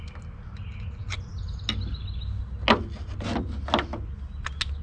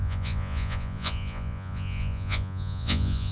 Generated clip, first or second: second